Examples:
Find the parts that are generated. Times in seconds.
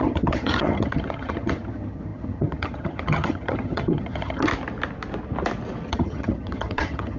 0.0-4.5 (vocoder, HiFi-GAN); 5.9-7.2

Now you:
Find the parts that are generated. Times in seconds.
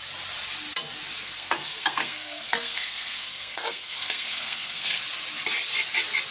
1.2-5.0 (codec, SNAC)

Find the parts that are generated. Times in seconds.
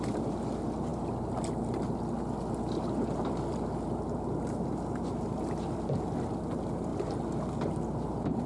none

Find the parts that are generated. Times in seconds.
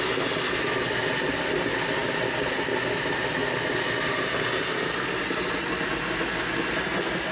none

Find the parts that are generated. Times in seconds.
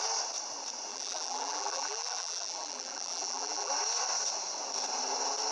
0.9-3.7 (vocoder, BigVGAN v2)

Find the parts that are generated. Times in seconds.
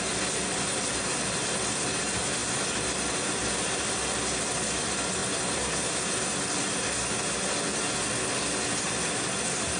5.2-6.3 (vocoder, BigVGAN v2)